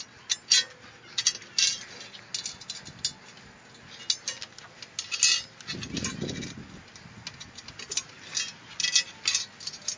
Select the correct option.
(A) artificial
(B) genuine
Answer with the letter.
B